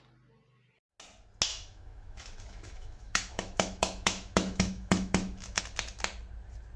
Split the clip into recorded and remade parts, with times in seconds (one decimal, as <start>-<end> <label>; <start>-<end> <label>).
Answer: 0.0-1.5 recorded; 1.5-5.6 remade; 5.6-6.8 recorded